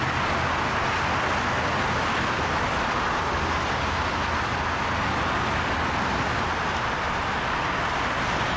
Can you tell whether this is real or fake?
real